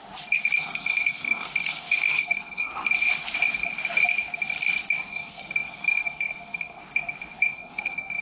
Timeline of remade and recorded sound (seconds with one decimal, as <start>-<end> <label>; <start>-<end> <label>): 0.0-0.6 recorded; 0.6-2.7 remade; 2.7-5.1 recorded; 5.1-6.8 remade; 6.8-7.5 recorded; 7.5-8.2 remade